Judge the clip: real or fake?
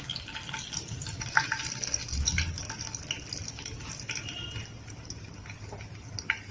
real